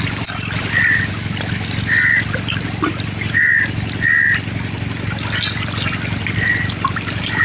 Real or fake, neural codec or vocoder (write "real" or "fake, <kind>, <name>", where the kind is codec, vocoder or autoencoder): real